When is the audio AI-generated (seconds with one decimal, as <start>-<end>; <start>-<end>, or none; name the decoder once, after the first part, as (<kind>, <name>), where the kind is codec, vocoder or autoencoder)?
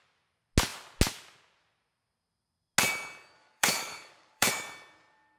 3.4-4.5 (codec, DAC)